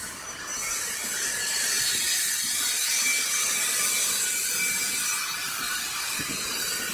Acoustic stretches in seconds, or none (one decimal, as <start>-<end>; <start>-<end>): 0.0-5.4